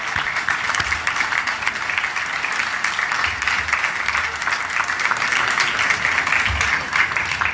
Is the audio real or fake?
real